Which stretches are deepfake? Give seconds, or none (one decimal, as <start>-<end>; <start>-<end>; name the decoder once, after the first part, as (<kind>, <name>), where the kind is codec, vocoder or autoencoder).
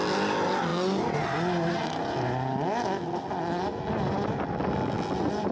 none